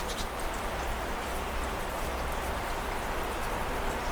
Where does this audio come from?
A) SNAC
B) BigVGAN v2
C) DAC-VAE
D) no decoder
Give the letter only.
D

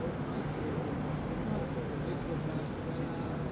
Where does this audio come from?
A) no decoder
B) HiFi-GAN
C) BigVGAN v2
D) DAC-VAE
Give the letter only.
A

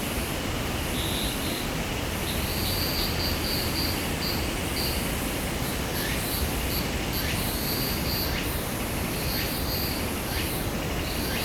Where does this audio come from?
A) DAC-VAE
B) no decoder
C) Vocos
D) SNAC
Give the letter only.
B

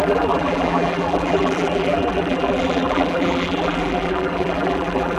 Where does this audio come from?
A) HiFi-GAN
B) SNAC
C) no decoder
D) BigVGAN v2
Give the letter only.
D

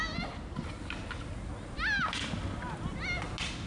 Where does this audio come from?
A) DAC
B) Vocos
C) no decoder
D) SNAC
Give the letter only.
C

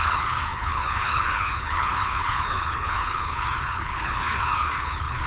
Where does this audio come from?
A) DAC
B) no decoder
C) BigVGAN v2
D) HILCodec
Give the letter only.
D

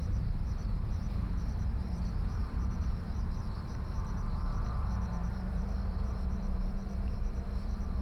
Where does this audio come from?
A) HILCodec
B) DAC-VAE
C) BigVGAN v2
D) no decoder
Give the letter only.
C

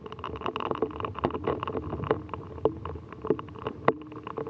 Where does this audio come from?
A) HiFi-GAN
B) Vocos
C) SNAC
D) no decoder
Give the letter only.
D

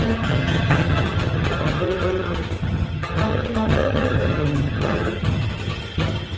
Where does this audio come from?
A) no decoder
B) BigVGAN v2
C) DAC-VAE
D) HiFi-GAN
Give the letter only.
D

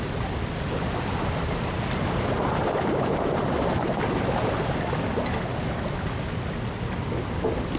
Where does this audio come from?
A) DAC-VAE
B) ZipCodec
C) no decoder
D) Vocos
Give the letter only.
C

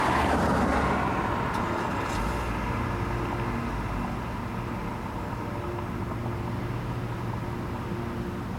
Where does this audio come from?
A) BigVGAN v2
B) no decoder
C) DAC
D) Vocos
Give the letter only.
B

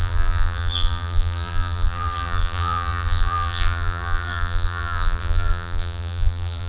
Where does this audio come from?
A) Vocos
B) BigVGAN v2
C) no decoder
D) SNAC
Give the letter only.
B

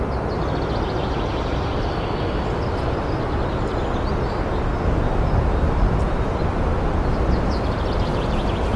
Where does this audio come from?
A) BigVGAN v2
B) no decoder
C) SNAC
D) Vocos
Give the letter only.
B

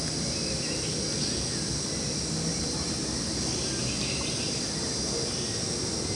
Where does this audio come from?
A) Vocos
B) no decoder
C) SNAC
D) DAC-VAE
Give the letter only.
B